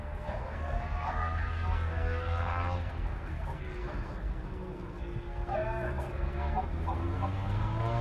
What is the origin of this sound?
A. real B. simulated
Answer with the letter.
B